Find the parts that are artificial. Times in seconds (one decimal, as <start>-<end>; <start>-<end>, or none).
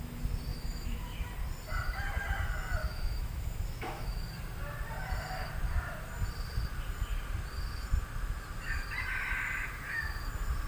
0.5-1.0; 2.8-4.2